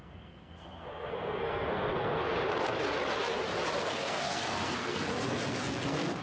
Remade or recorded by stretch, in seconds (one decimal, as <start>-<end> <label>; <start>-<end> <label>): 0.0-2.3 remade; 2.3-3.8 recorded; 3.8-6.2 remade